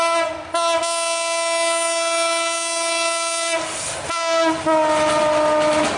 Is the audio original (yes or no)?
yes